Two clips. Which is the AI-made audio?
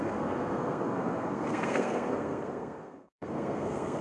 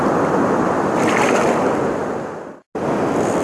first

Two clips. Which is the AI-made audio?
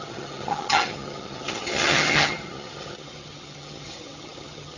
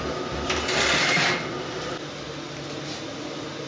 first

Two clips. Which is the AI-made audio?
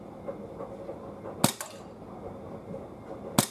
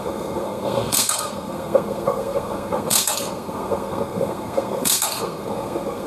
second